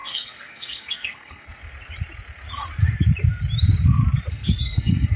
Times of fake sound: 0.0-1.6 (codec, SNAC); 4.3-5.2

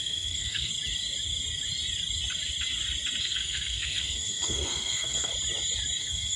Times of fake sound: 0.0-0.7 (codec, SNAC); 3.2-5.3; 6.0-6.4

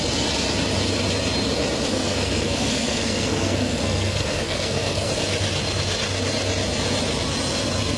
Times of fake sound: 1.9-5.1 (codec, SNAC)

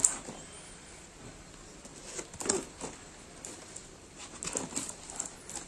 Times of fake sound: none

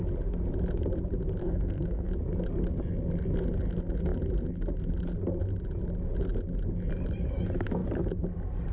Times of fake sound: 1.4-2.1 (codec, SNAC)